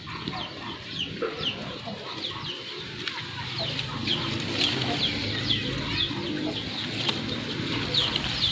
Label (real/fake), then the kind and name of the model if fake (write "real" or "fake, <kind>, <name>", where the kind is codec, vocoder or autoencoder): real